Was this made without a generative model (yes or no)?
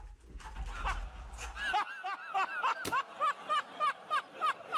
yes